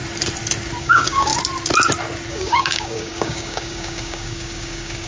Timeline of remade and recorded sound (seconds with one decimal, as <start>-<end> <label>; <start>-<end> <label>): 0.0-0.8 recorded; 0.8-1.3 remade; 1.3-2.3 recorded; 2.3-5.1 remade